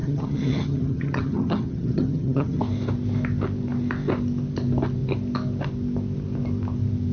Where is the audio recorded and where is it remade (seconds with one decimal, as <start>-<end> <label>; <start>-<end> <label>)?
0.0-2.6 remade; 2.6-7.1 recorded